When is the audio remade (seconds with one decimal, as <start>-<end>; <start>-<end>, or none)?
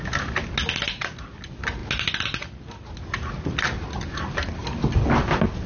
none